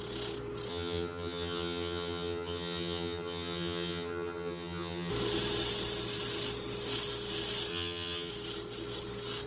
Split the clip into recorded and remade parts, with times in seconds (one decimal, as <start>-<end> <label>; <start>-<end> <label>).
0.0-0.7 recorded; 0.7-5.1 remade; 5.1-7.7 recorded; 7.7-8.3 remade; 8.3-9.5 recorded